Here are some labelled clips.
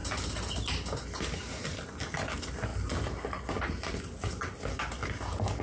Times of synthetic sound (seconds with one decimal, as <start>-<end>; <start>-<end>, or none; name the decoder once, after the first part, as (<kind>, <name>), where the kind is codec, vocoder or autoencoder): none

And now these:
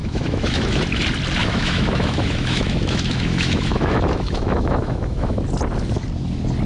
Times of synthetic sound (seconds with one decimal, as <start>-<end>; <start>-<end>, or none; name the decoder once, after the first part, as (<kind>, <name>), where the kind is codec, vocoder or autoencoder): 0.0-0.8 (autoencoder, DAC-VAE); 1.4-5.4

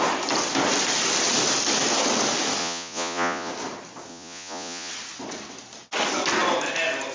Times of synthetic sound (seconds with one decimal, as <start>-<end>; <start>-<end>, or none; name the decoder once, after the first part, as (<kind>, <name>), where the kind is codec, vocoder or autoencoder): 2.6-3.5 (vocoder, Vocos); 4.1-4.9

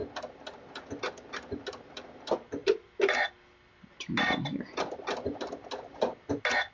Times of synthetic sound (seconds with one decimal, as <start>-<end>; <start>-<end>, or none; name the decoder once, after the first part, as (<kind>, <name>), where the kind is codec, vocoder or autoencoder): none

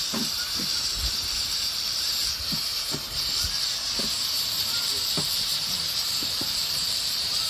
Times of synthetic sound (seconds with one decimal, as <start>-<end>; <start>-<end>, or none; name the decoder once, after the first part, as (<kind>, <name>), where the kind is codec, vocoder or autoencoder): 0.0-2.7 (vocoder, BigVGAN v2); 4.4-7.5

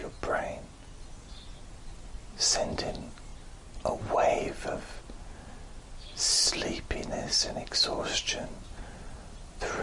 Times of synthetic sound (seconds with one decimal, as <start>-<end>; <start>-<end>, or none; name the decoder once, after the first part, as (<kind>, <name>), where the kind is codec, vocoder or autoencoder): 2.9-3.3 (vocoder, BigVGAN v2); 8.0-9.8